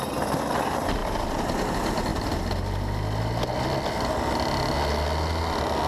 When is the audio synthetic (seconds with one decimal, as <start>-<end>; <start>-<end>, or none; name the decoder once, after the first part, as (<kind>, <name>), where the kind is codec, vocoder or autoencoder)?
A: none